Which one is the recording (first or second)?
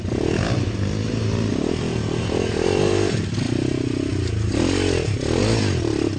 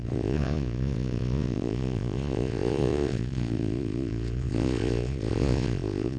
first